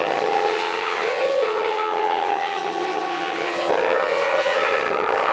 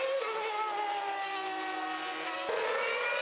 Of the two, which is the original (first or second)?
second